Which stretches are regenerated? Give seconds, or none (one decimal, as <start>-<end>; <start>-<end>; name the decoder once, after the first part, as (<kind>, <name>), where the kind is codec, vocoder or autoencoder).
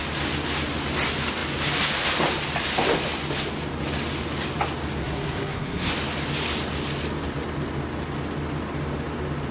5.0-5.9 (codec, SNAC)